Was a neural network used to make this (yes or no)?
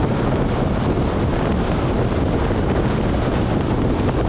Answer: no